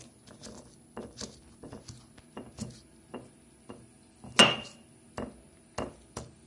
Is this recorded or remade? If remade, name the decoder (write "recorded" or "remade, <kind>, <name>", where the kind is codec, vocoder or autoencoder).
recorded